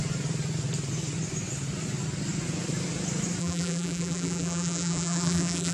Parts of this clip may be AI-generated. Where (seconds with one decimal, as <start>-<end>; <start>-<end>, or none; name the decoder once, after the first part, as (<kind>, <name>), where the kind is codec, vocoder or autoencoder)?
3.4-5.7 (vocoder, BigVGAN v2)